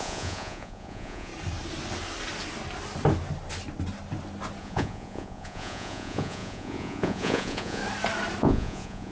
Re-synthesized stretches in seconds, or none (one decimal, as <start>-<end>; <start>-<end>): 0.0-1.3; 4.6-7.8; 8.4-9.1